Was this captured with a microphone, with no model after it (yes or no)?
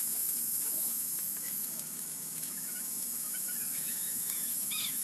no